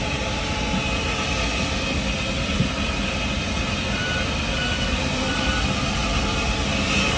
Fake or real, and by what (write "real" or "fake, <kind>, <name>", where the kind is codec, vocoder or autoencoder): real